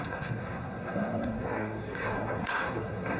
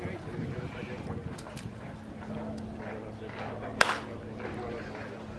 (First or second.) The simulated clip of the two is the first